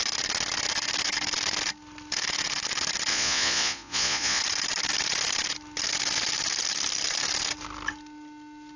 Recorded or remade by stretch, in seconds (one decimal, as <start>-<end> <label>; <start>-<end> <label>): 0.0-3.1 recorded; 3.1-4.4 remade; 4.4-8.8 recorded